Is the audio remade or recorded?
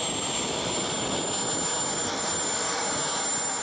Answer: recorded